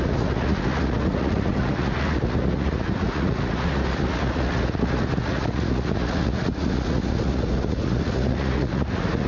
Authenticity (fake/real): fake